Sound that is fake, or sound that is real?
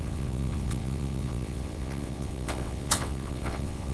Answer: fake